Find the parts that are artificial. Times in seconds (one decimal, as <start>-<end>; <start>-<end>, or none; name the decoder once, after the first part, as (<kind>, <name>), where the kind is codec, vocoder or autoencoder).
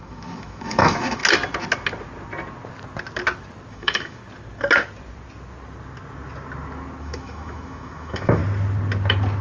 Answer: 0.0-1.2 (autoencoder, DAC-VAE); 3.7-4.2; 7.0-8.4